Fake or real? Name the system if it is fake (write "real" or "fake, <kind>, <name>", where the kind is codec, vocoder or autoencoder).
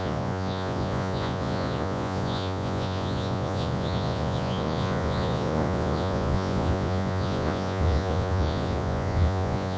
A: fake, vocoder, Vocos